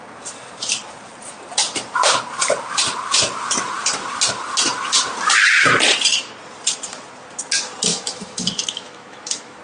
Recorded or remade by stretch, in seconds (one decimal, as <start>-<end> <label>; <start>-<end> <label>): 0.0-7.9 recorded; 7.9-9.6 remade